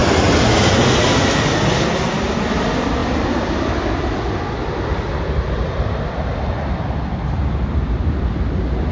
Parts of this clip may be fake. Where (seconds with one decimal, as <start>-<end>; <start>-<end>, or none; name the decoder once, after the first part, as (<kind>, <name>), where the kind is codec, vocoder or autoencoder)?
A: none